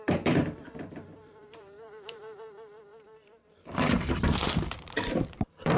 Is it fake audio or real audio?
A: fake